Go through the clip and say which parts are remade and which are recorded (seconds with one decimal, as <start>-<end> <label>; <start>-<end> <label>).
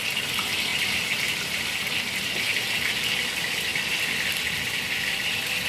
0.0-0.7 recorded; 0.7-3.0 remade; 3.0-3.7 recorded; 3.7-4.9 remade; 4.9-5.7 recorded